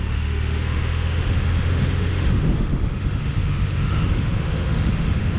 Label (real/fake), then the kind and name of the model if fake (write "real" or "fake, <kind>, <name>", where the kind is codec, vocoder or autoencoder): fake, autoencoder, DAC-VAE